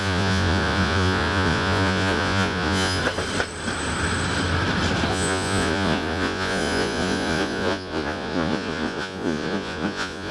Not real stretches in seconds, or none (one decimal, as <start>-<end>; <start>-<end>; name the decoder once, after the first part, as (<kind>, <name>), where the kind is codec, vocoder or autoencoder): 0.0-3.0 (vocoder, Vocos); 5.1-10.3